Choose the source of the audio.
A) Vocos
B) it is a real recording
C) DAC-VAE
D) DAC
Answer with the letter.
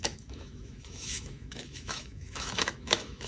C